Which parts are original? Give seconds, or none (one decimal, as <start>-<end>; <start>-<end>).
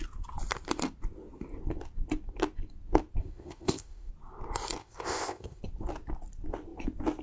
0.0-3.2; 4.1-4.8; 5.6-7.2